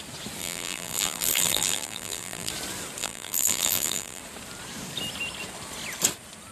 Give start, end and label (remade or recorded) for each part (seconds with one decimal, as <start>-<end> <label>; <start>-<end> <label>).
0.0-0.4 recorded; 0.4-2.5 remade; 2.5-3.0 recorded; 3.0-4.2 remade; 4.2-6.5 recorded